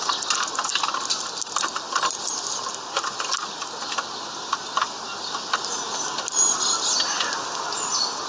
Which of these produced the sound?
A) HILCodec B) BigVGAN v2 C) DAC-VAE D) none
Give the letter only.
D